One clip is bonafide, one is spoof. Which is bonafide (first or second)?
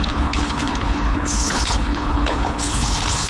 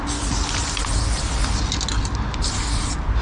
second